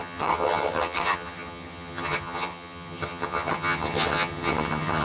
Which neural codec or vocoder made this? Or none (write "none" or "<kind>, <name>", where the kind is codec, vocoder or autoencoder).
vocoder, HiFi-GAN